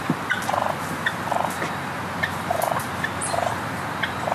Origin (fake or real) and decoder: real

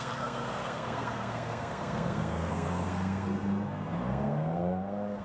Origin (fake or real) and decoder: fake, codec, SNAC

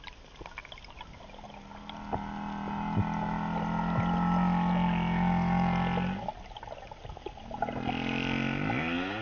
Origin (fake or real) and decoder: real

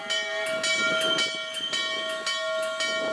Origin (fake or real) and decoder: real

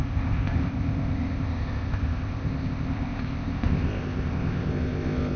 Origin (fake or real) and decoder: fake, codec, ZipCodec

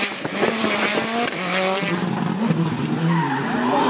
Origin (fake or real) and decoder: real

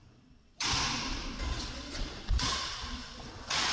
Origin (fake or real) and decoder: fake, vocoder, Vocos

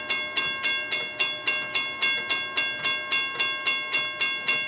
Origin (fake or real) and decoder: real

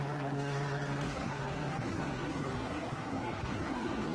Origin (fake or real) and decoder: fake, codec, SNAC